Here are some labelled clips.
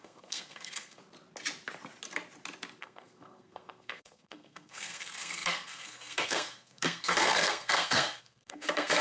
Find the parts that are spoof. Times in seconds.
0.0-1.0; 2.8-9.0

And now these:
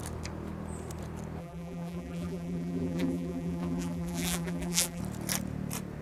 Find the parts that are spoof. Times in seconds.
1.4-5.0